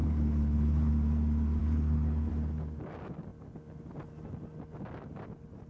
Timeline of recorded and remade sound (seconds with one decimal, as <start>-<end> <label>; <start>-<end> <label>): 0.0-0.9 remade; 0.9-1.6 recorded; 1.6-2.3 remade; 2.3-5.7 recorded